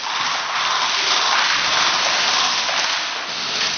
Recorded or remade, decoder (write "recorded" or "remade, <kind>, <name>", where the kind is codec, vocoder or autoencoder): recorded